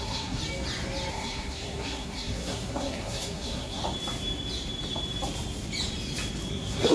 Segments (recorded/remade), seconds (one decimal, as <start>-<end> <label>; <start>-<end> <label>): 0.0-0.4 remade; 0.4-1.1 recorded; 1.1-3.8 remade; 3.8-6.5 recorded; 6.5-6.9 remade